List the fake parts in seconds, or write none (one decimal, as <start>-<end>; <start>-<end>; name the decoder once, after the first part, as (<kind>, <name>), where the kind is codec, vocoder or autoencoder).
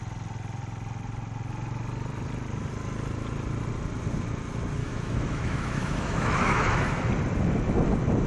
4.8-7.1 (autoencoder, DAC-VAE)